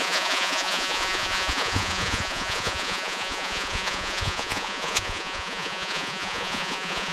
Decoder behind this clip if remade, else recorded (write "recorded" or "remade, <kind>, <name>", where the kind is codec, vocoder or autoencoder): remade, vocoder, Vocos